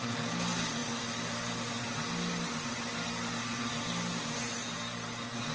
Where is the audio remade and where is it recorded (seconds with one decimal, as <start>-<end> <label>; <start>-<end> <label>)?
0.0-5.5 recorded